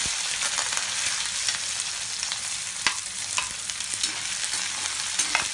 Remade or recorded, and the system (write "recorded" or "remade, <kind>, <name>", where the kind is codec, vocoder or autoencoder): recorded